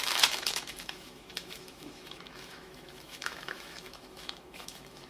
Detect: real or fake fake